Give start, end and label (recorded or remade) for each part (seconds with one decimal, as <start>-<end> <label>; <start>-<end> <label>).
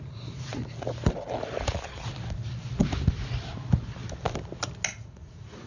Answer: 0.0-4.9 recorded; 4.9-5.7 remade